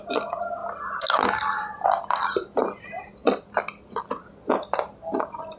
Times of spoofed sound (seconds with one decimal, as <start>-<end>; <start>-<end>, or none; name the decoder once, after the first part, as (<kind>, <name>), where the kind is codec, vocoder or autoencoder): none